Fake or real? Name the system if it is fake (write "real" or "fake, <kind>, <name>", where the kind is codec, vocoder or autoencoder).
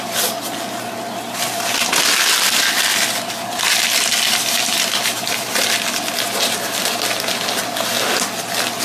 real